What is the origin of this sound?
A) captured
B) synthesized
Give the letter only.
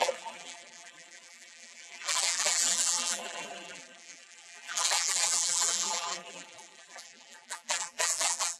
B